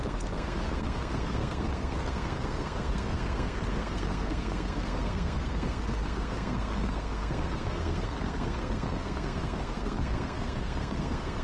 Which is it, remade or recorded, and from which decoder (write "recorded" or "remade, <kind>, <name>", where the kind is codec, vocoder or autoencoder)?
remade, codec, SNAC